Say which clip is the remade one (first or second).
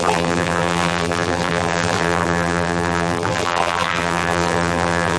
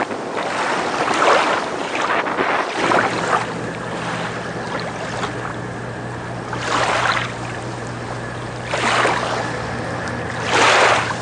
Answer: first